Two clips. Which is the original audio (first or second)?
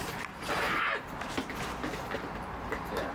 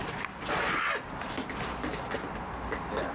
second